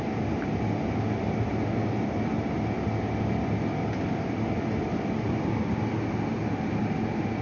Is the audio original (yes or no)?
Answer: yes